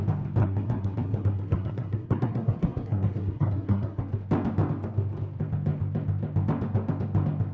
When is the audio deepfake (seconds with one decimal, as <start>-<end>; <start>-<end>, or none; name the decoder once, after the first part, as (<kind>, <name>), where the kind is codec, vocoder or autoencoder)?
0.4-4.0 (codec, SNAC)